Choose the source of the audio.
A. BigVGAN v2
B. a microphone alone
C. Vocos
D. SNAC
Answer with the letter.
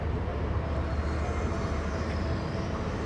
A